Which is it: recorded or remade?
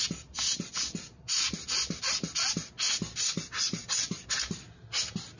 recorded